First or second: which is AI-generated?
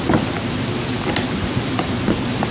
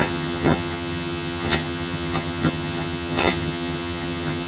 second